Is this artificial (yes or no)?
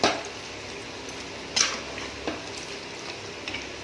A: no